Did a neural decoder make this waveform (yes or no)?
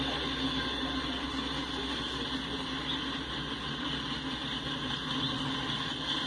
no